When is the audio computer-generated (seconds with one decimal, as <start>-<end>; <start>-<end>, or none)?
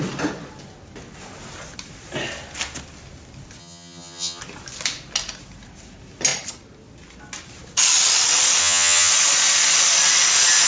3.6-4.4; 8.6-9.1